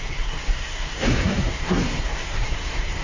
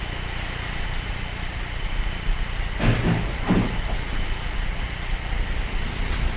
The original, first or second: second